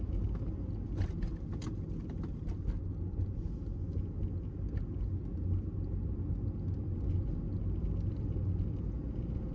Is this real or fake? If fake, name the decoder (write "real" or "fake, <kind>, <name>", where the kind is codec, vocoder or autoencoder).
real